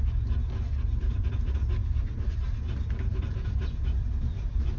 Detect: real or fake real